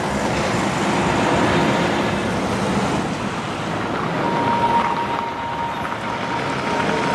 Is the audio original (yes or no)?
yes